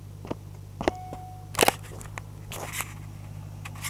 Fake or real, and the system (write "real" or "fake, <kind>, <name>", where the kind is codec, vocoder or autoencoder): real